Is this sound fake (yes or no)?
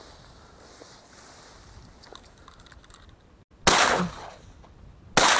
no